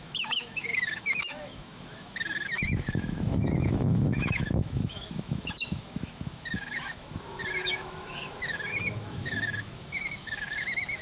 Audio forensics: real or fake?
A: fake